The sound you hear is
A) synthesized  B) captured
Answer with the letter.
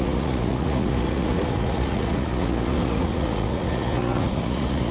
A